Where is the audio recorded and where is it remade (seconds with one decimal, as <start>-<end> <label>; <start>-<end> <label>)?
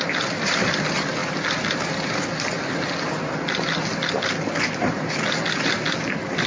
0.0-6.5 recorded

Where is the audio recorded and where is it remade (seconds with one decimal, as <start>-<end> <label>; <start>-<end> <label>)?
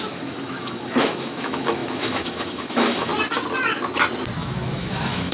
0.0-3.1 remade; 3.1-4.4 recorded; 4.4-5.3 remade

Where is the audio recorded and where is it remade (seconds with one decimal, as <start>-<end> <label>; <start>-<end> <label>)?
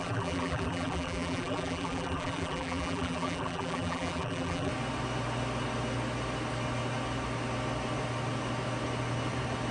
0.0-4.7 remade; 4.7-9.7 recorded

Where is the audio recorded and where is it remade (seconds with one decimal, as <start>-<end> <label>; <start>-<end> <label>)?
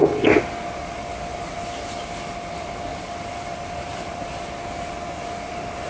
0.0-2.9 recorded; 2.9-4.6 remade; 4.6-5.9 recorded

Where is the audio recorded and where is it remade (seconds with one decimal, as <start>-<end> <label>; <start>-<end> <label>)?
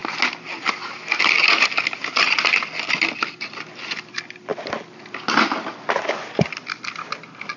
0.0-7.6 recorded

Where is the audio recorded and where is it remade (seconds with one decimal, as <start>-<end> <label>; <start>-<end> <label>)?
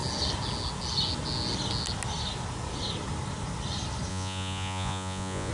0.0-4.1 recorded; 4.1-5.5 remade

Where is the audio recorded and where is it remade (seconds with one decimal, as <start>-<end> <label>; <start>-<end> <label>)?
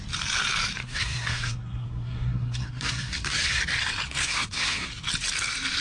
0.0-0.8 recorded; 0.8-3.6 remade; 3.6-4.2 recorded; 4.2-4.9 remade; 4.9-5.8 recorded